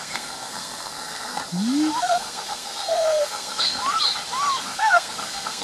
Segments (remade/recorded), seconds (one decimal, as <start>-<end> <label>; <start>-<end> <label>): 0.0-1.4 remade; 1.4-2.0 recorded; 2.0-3.8 remade; 3.8-4.6 recorded; 4.6-5.6 remade